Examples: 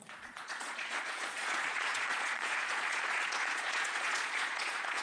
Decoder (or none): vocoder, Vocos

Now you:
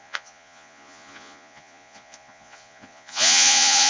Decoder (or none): vocoder, Vocos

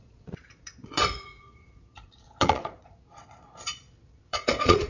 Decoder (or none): vocoder, Vocos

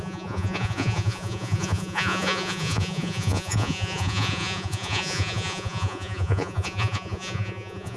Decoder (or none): vocoder, Vocos